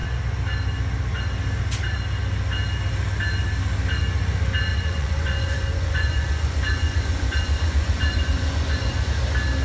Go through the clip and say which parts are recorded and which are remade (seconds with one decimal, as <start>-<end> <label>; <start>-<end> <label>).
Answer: 0.0-4.7 recorded; 4.7-9.1 remade; 9.1-9.6 recorded